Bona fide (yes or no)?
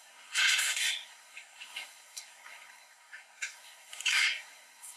no